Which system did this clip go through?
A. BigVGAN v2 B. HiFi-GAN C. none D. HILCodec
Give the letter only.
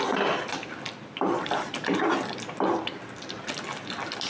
C